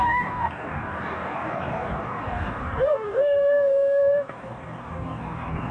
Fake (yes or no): yes